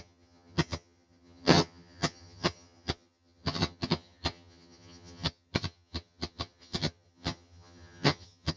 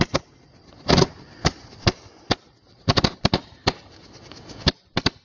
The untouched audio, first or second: second